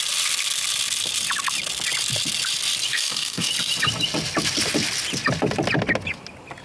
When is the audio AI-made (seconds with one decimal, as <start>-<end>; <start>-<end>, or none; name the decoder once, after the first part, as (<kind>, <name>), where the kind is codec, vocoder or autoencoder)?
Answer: 2.9-3.5 (codec, DAC)